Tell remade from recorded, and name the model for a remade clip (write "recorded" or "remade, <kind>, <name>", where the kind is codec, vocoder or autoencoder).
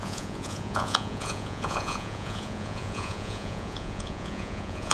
remade, vocoder, Vocos